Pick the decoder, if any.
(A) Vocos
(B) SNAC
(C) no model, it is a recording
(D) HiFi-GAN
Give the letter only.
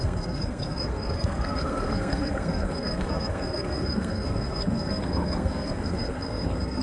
B